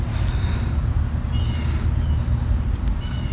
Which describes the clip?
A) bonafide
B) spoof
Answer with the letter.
A